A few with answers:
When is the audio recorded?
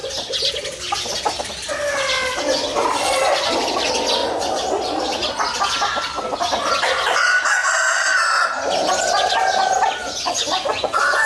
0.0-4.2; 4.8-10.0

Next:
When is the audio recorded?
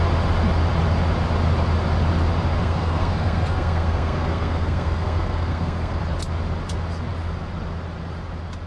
0.0-2.6; 6.0-8.7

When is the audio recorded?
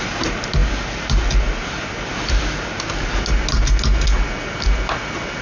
0.0-5.4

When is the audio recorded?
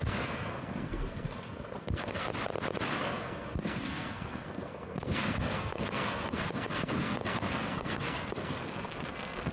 2.3-3.0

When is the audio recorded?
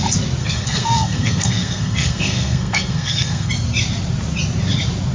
0.0-0.4; 3.5-5.1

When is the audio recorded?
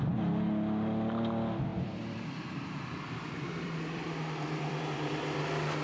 0.0-1.7; 5.2-5.8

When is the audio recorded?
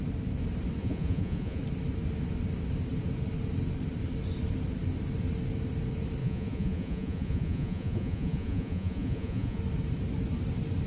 0.0-0.8; 1.6-6.2; 9.6-10.9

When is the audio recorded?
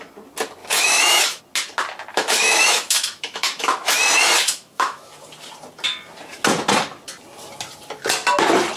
0.0-0.6; 1.4-2.1; 3.9-4.4; 5.1-8.8